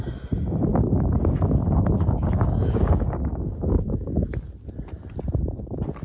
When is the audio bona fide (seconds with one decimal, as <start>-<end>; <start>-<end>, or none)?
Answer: 0.0-0.7; 4.3-6.0